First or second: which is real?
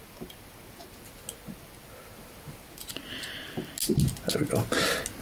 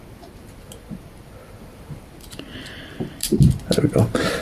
first